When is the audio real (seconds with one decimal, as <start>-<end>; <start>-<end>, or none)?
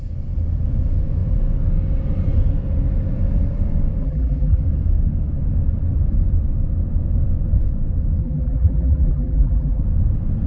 0.0-4.0; 4.6-8.2; 9.8-10.5